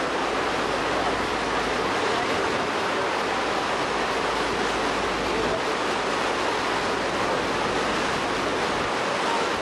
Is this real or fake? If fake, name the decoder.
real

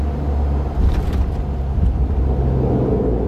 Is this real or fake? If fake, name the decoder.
real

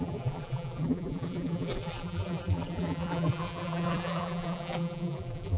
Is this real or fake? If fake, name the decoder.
fake, vocoder, BigVGAN v2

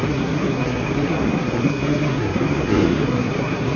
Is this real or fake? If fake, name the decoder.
fake, codec, SNAC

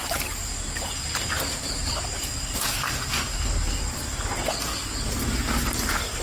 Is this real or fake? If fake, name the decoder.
real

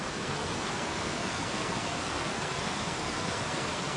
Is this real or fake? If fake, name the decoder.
fake, codec, SNAC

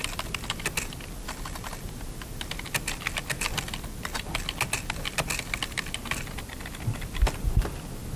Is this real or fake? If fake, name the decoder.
real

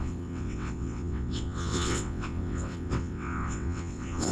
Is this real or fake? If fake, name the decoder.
fake, vocoder, WaveNeXt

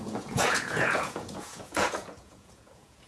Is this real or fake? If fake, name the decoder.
fake, vocoder, Vocos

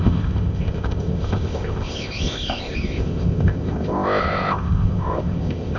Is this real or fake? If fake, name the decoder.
fake, codec, ZipCodec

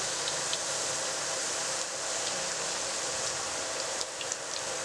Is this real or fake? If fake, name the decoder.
real